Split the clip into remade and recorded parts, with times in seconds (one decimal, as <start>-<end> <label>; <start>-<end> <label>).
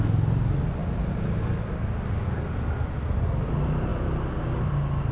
0.0-5.1 recorded